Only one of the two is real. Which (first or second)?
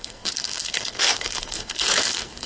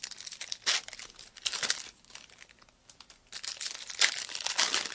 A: second